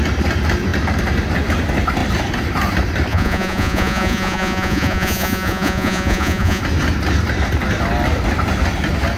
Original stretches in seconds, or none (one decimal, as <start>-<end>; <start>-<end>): 0.0-3.1; 6.6-9.2